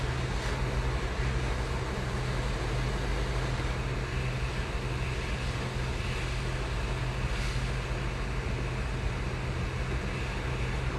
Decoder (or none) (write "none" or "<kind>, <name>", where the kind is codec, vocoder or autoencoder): none